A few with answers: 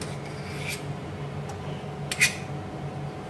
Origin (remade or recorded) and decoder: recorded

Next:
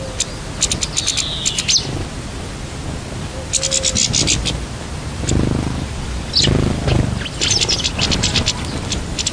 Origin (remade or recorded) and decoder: recorded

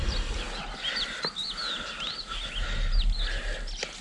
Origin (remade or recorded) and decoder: recorded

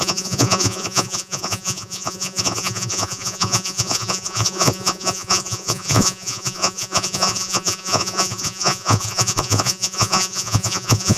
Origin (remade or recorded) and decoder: remade, vocoder, Vocos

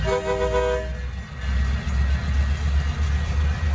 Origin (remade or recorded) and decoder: recorded